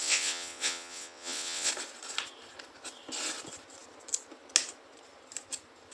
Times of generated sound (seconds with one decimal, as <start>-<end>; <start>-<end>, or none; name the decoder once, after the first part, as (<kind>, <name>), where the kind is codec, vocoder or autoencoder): 0.0-1.7 (vocoder, WaveNeXt)